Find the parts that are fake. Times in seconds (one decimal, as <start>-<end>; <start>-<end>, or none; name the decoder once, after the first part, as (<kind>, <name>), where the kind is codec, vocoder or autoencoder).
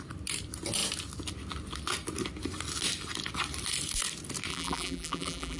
4.5-5.6 (vocoder, BigVGAN v2)